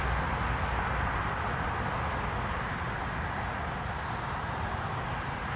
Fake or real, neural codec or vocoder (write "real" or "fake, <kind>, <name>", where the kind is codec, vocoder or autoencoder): real